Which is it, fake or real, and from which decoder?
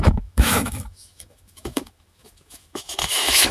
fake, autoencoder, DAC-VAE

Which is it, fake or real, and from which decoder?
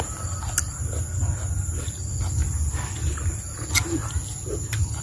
real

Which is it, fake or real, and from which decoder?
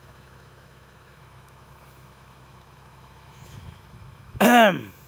fake, autoencoder, DAC-VAE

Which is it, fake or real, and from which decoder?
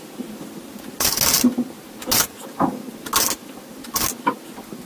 real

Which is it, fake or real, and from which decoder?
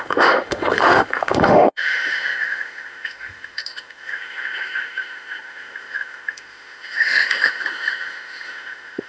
fake, autoencoder, DAC-VAE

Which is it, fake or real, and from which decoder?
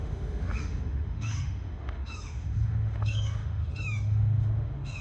fake, autoencoder, DAC-VAE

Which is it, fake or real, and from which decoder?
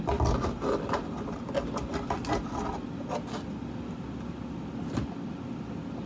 real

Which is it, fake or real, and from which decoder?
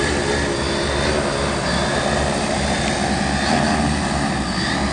real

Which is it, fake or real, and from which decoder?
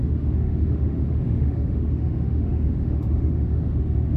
fake, autoencoder, DAC-VAE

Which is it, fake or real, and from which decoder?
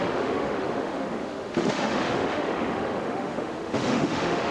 fake, autoencoder, DAC-VAE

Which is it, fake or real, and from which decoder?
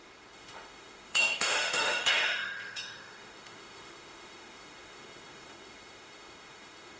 fake, autoencoder, DAC-VAE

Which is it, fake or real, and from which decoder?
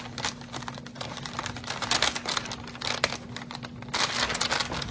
real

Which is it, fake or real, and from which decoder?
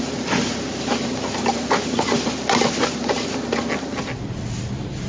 real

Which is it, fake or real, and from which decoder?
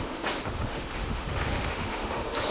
fake, autoencoder, DAC-VAE